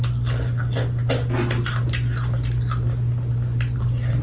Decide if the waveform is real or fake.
real